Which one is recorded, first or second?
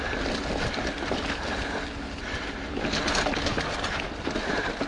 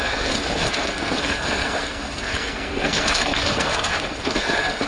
first